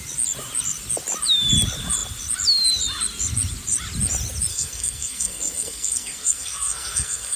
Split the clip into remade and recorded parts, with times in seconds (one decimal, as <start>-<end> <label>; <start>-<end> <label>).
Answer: 0.0-4.5 recorded; 4.5-7.4 remade